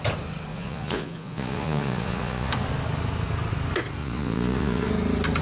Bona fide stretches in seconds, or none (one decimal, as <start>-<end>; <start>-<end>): 0.0-0.5; 2.5-4.0; 4.9-5.4